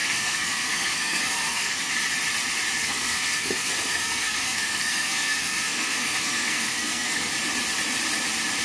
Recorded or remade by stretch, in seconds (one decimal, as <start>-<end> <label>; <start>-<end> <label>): 0.0-1.9 remade; 1.9-2.8 recorded; 2.8-7.3 remade; 7.3-8.6 recorded